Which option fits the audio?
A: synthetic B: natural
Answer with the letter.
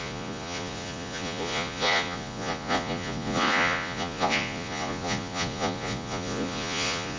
A